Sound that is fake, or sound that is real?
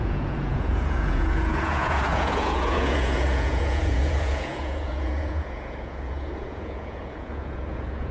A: fake